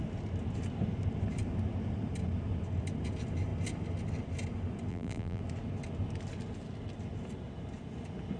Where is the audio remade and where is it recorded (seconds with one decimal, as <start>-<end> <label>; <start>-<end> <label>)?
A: 0.0-4.9 recorded; 4.9-5.4 remade; 5.4-8.4 recorded